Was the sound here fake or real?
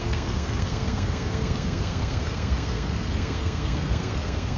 fake